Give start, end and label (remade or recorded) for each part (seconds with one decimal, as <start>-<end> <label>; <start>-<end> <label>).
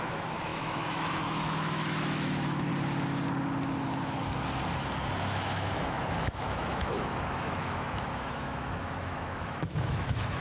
0.0-2.7 remade; 2.7-5.2 recorded; 5.2-10.4 remade